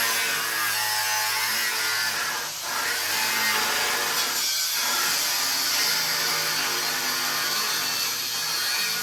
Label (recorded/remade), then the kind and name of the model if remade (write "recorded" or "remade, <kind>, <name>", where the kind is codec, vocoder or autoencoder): recorded